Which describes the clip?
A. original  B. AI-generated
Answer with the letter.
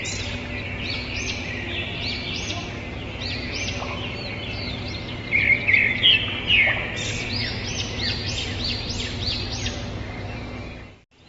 A